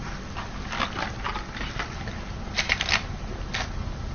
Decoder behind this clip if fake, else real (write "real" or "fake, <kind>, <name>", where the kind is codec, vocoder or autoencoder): real